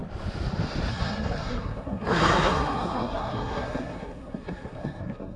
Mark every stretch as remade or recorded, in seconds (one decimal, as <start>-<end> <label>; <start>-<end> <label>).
0.0-0.9 recorded; 0.9-5.4 remade